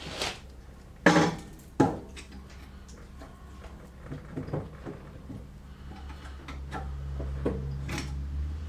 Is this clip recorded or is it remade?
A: recorded